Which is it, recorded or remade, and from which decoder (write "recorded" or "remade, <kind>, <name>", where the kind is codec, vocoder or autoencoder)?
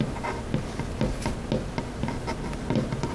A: recorded